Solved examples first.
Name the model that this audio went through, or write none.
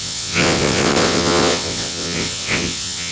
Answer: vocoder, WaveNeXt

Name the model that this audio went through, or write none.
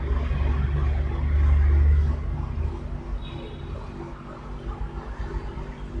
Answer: none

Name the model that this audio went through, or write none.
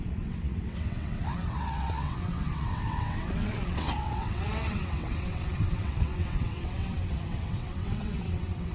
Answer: vocoder, WaveNeXt